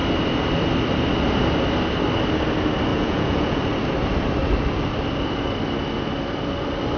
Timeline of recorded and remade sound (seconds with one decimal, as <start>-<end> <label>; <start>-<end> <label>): 0.0-2.9 recorded; 2.9-3.6 remade; 3.6-7.0 recorded